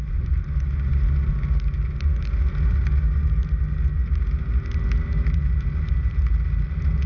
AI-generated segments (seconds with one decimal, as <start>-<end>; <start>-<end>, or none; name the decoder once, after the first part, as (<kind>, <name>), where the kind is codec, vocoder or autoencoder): none